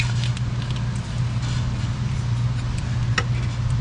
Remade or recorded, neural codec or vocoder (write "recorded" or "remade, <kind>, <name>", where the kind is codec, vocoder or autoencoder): recorded